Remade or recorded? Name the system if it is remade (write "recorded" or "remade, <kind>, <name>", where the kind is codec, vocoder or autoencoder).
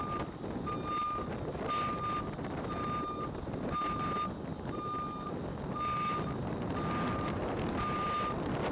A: recorded